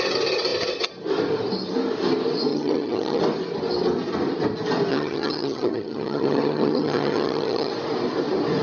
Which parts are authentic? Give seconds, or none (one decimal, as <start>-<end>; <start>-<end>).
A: 0.0-2.5; 3.2-4.9; 7.7-8.6